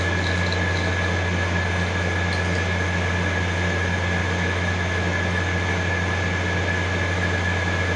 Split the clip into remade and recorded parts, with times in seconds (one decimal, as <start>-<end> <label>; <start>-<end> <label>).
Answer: 0.0-4.2 recorded; 4.2-4.7 remade; 4.7-8.0 recorded